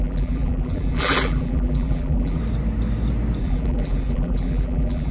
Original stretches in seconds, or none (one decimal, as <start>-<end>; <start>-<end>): 2.4-3.4

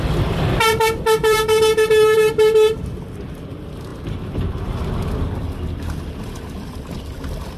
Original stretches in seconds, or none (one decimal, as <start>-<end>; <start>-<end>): 0.0-1.2; 2.3-7.6

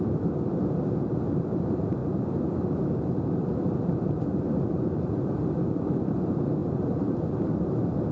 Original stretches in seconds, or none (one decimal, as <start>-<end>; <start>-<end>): none

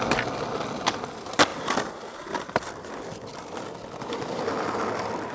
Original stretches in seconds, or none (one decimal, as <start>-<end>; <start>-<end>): 0.0-1.5; 4.4-5.3

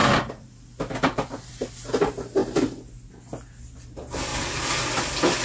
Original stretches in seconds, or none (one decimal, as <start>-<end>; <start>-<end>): 1.7-4.3; 5.0-5.4

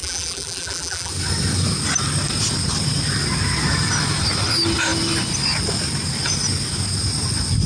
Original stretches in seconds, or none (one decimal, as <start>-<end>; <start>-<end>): 1.1-7.7